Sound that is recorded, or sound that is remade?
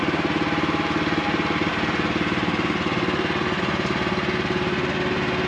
recorded